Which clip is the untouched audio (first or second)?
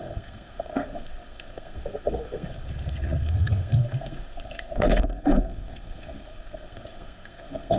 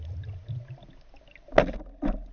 second